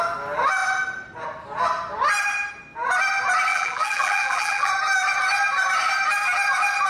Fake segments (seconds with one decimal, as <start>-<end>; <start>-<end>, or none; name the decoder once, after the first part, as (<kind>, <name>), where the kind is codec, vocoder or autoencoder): 3.5-4.7 (vocoder, BigVGAN v2)